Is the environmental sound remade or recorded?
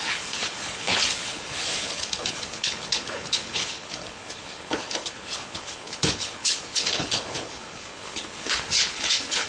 remade